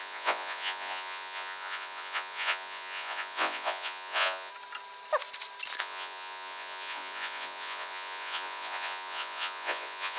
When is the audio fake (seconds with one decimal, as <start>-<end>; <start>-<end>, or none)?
0.0-4.5; 5.8-10.2